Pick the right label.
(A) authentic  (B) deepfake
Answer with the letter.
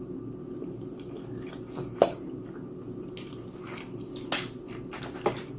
A